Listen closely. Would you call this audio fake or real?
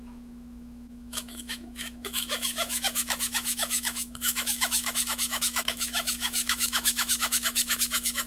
fake